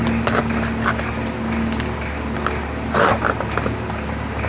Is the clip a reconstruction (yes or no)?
no